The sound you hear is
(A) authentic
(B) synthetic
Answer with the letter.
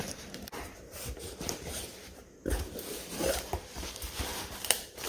B